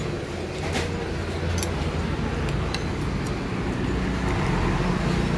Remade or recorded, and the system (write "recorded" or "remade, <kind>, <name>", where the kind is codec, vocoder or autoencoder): recorded